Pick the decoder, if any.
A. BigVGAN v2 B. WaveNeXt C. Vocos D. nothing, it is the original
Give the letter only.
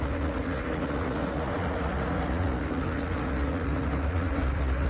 C